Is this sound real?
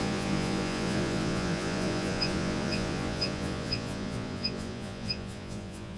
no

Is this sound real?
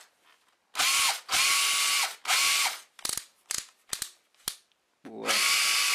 yes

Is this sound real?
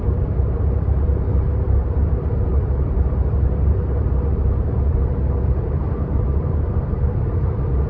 no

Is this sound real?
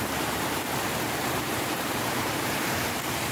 no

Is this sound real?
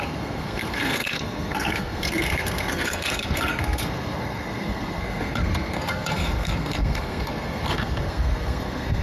no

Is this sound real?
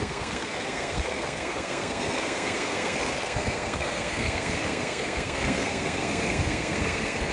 no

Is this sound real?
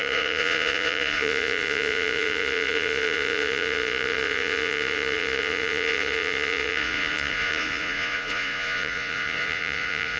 no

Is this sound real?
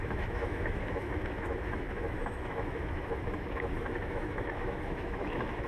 no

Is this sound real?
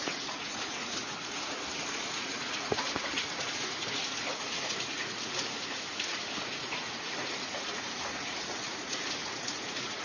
no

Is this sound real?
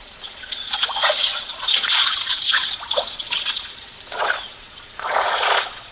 no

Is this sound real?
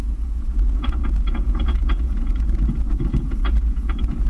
no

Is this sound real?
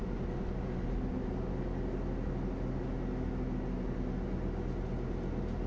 yes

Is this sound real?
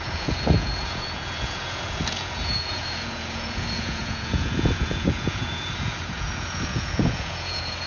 no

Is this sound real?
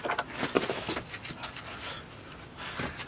yes